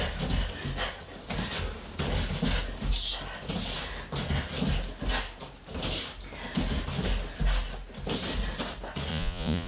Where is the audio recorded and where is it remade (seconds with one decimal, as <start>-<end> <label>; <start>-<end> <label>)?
0.0-9.1 recorded; 9.1-9.7 remade

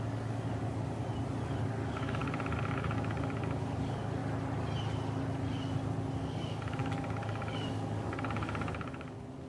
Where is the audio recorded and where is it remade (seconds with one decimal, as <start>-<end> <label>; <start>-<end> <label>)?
0.0-1.0 remade; 1.0-1.6 recorded; 1.6-4.2 remade; 4.2-6.2 recorded; 6.2-9.5 remade

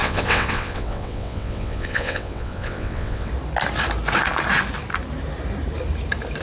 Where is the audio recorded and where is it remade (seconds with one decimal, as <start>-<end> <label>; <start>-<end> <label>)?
0.0-3.3 remade; 3.3-6.4 recorded

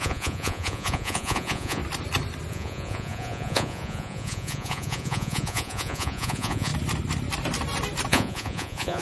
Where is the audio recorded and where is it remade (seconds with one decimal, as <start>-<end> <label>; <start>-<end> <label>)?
0.0-1.8 remade; 1.8-2.5 recorded; 2.5-6.7 remade; 6.7-8.1 recorded; 8.1-9.0 remade

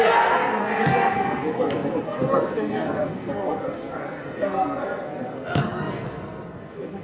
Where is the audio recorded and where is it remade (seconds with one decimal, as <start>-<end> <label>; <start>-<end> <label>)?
0.0-7.0 remade

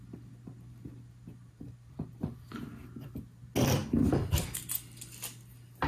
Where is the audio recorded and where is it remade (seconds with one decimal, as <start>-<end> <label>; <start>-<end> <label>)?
0.0-1.4 recorded; 1.4-2.6 remade; 2.6-5.9 recorded

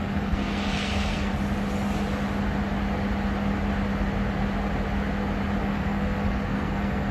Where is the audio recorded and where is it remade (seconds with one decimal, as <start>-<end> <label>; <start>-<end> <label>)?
0.0-1.3 remade; 1.3-5.6 recorded; 5.6-7.1 remade